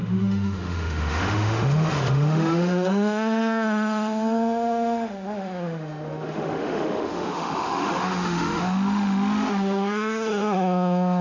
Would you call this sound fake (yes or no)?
yes